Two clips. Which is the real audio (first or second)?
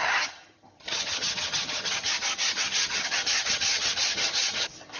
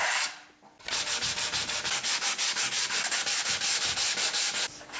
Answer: second